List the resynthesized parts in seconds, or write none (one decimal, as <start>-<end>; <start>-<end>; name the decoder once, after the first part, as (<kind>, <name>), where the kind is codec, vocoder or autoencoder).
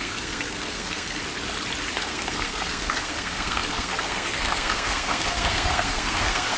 0.0-1.2 (codec, SNAC); 1.9-6.6